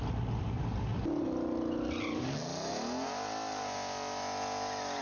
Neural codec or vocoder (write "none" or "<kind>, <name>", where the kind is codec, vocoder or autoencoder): none